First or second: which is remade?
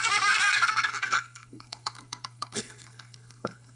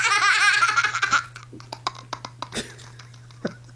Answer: first